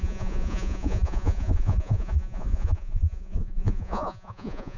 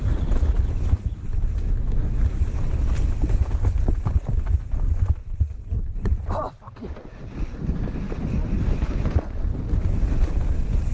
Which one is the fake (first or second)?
first